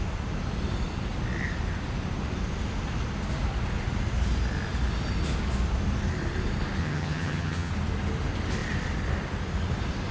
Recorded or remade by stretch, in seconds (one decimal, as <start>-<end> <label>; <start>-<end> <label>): 0.0-6.8 recorded; 6.8-7.7 remade; 7.7-10.1 recorded